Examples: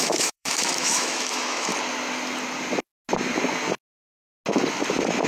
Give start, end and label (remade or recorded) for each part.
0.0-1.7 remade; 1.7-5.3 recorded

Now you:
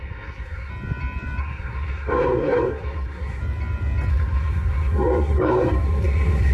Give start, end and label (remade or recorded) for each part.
0.0-0.7 remade; 0.7-1.4 recorded; 1.4-3.4 remade; 3.4-4.1 recorded; 4.1-6.5 remade